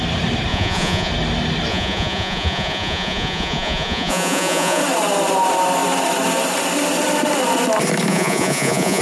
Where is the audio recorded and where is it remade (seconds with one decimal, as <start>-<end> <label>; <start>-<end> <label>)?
0.0-0.5 recorded; 0.5-1.1 remade; 1.1-1.7 recorded; 1.7-4.8 remade; 4.8-8.1 recorded; 8.1-9.0 remade